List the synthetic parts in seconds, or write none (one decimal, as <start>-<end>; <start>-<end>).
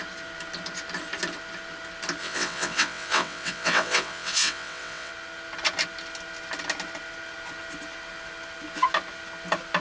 2.2-5.1